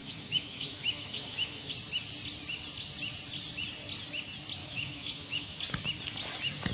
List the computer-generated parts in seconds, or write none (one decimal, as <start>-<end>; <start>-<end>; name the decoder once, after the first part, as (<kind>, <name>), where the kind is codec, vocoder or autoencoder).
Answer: 0.0-1.7 (autoencoder, DAC-VAE); 4.6-5.6